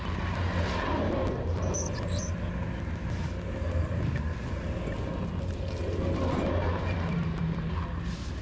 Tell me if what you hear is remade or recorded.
recorded